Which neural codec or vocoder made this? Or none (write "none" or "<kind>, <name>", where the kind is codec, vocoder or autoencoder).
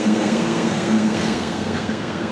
codec, SNAC